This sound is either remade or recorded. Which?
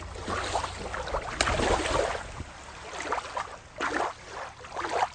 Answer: recorded